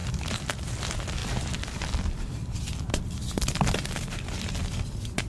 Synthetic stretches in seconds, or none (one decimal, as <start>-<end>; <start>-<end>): 0.0-0.5; 1.2-3.9